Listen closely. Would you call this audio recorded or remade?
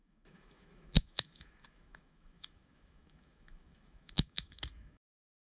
remade